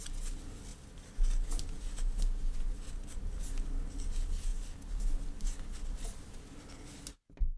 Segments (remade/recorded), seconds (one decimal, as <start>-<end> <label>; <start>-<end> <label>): 0.0-7.6 recorded